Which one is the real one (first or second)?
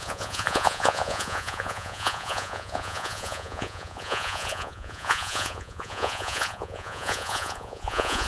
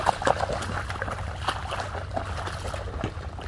second